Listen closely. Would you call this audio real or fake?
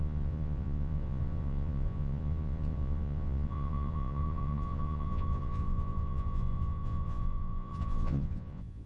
fake